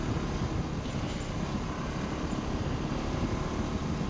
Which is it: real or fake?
real